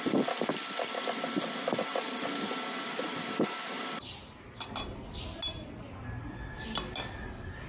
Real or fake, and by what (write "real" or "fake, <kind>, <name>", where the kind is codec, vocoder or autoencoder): real